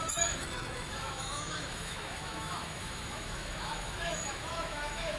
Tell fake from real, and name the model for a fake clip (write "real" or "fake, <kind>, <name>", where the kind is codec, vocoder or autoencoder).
fake, autoencoder, DAC-VAE